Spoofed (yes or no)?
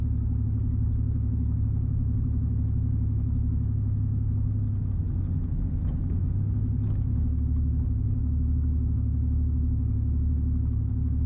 yes